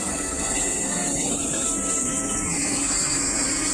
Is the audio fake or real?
fake